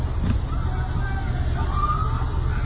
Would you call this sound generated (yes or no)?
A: no